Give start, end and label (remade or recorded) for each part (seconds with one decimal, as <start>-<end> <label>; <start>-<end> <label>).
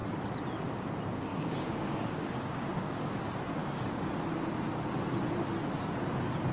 0.0-1.3 recorded; 1.3-3.1 remade; 3.1-3.6 recorded; 3.6-4.1 remade; 4.1-6.5 recorded